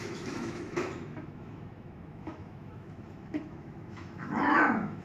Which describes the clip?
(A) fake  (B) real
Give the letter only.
A